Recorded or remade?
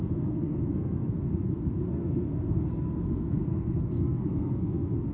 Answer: remade